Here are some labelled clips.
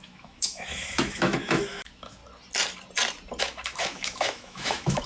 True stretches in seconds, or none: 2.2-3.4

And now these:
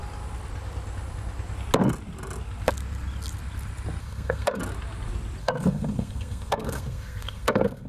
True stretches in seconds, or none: 0.0-4.0; 4.6-5.4

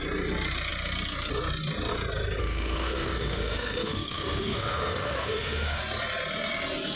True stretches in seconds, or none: 0.0-2.4; 5.8-7.0

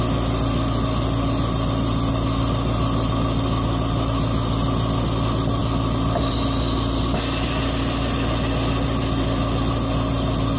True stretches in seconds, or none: 0.0-10.6

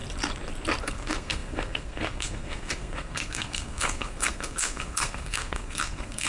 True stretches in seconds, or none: 0.0-0.8